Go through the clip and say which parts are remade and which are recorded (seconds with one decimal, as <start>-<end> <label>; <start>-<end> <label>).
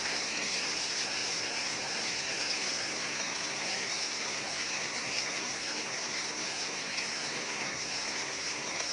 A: 0.0-8.9 remade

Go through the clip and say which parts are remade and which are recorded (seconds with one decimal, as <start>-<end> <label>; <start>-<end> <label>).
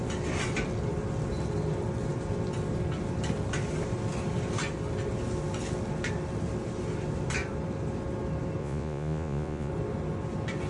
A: 0.0-8.6 recorded; 8.6-9.7 remade; 9.7-10.7 recorded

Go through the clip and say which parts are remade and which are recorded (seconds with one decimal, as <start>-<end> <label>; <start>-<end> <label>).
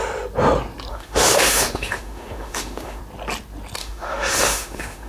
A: 0.0-0.9 recorded; 0.9-3.0 remade; 3.0-3.8 recorded; 3.8-5.1 remade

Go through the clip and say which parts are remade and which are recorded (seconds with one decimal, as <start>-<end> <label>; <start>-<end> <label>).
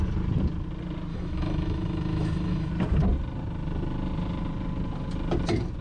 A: 0.0-1.1 recorded; 1.1-2.7 remade; 2.7-5.8 recorded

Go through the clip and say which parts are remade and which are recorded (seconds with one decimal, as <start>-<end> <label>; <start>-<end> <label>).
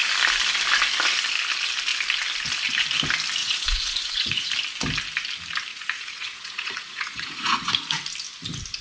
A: 0.0-3.4 recorded; 3.4-4.5 remade; 4.5-5.7 recorded; 5.7-7.7 remade; 7.7-8.8 recorded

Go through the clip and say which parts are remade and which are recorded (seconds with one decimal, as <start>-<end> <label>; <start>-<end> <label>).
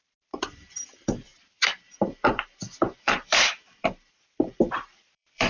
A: 0.0-5.5 remade